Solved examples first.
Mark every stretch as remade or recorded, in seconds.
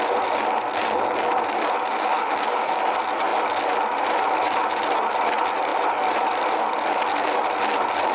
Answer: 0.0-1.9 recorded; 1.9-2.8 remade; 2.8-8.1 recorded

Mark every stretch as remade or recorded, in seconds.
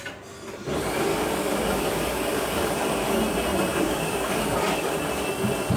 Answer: 0.0-1.1 recorded; 1.1-3.2 remade; 3.2-3.7 recorded; 3.7-5.0 remade; 5.0-5.8 recorded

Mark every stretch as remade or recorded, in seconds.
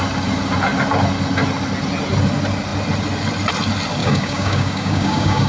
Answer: 0.0-4.0 recorded; 4.0-5.5 remade